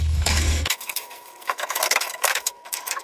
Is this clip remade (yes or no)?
yes